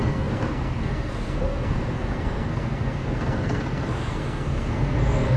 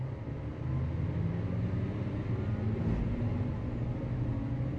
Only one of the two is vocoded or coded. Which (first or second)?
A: first